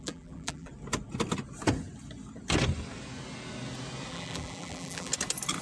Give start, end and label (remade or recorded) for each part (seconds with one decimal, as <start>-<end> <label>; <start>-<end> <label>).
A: 0.0-0.7 remade; 0.7-4.1 recorded; 4.1-5.1 remade; 5.1-5.6 recorded